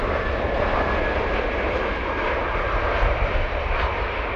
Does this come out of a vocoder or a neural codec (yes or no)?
no